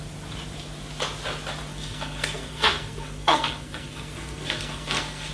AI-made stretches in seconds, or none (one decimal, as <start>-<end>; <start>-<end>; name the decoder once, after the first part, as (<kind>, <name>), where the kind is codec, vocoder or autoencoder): 1.7-5.3 (codec, SNAC)